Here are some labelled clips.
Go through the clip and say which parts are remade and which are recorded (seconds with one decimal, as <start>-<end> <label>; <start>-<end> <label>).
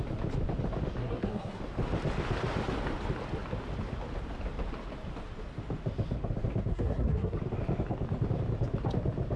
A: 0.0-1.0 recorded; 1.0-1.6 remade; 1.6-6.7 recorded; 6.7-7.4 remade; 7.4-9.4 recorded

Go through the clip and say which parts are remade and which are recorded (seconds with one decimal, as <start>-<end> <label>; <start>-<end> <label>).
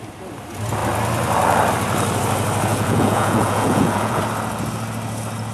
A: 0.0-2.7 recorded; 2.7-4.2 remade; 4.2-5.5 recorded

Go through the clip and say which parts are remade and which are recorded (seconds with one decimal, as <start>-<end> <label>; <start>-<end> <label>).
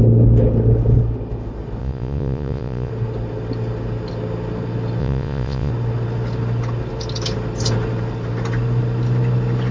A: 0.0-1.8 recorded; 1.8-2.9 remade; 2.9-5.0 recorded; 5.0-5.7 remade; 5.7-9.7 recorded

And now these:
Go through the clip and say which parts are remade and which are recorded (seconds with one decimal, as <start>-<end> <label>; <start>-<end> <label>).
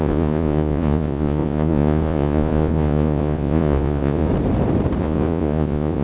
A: 0.0-4.3 remade; 4.3-5.0 recorded; 5.0-6.0 remade